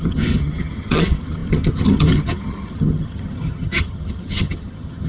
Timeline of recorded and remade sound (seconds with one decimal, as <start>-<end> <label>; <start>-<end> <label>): 0.0-5.1 remade